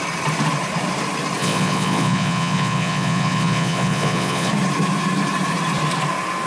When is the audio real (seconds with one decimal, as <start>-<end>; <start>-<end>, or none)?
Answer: 0.0-1.4; 4.5-6.5